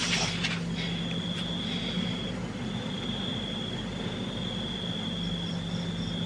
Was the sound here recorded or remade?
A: recorded